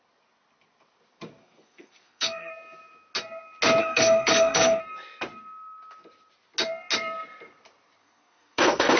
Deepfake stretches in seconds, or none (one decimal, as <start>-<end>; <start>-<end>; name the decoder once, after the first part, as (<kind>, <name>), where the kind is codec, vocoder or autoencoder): 1.4-2.5 (codec, SNAC); 3.8-4.8; 8.0-9.0